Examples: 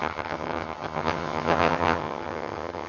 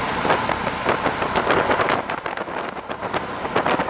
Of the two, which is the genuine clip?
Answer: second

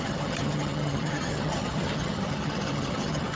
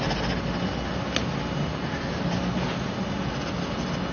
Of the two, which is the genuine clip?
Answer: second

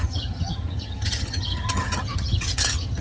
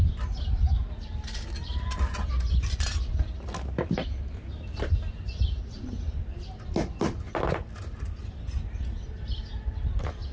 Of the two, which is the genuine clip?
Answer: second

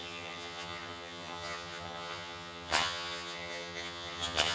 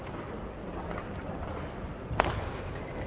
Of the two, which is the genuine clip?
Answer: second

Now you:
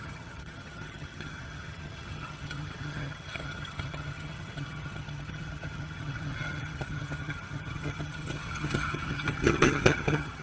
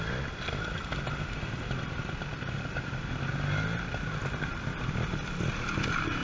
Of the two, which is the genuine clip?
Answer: second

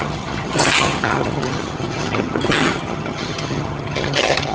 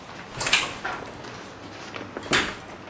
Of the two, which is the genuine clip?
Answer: second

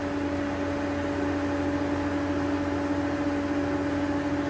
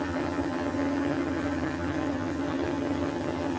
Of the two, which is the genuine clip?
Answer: first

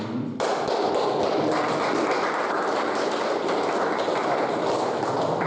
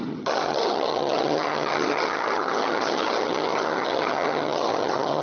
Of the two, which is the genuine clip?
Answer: first